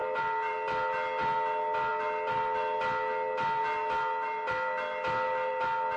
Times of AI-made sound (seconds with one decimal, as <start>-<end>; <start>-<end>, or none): none